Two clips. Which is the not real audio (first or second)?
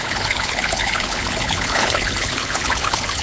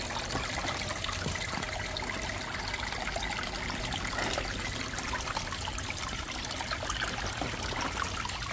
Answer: first